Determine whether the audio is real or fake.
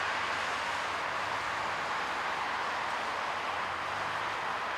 real